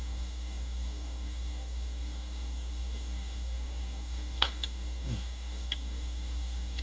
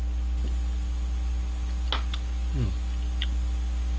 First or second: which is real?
second